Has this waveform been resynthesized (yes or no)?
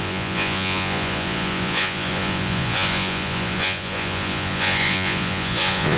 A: yes